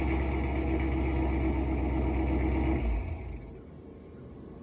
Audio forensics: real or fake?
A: real